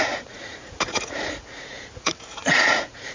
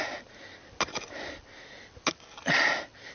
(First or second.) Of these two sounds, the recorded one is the second